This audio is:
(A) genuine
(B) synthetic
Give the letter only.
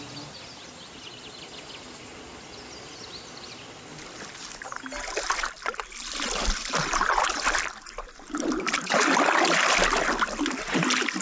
A